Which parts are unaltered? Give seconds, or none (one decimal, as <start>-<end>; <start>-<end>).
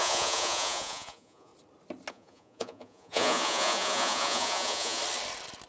1.5-2.1; 5.0-5.7